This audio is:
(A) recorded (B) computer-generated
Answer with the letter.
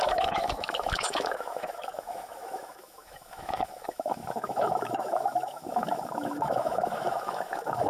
B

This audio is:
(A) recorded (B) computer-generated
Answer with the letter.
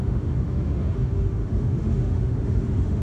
B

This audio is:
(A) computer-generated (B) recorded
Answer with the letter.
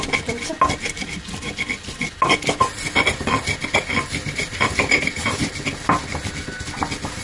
B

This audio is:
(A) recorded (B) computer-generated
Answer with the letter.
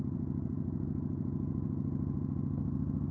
B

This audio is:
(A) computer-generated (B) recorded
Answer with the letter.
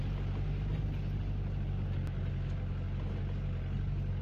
B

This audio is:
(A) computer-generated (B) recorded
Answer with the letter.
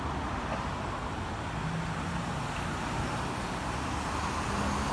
B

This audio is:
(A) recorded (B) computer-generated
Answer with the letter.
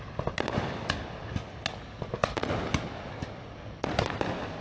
A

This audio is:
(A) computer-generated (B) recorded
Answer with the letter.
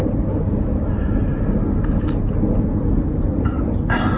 B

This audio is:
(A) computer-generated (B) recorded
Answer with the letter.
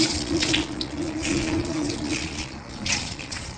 A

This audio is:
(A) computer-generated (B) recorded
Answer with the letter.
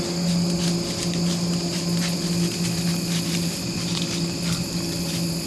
B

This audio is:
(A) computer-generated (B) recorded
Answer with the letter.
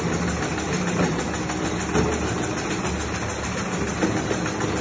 B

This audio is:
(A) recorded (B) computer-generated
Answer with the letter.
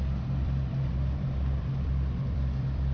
B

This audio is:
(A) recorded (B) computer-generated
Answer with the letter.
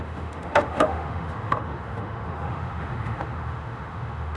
B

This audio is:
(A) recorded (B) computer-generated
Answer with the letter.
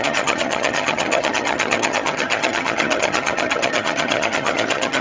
B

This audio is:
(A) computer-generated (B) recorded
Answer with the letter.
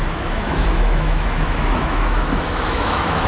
A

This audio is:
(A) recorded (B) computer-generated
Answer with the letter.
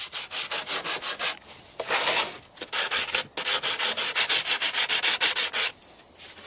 A